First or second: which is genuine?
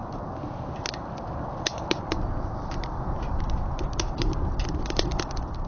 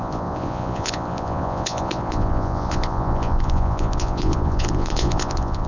first